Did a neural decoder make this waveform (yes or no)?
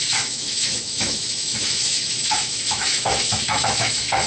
yes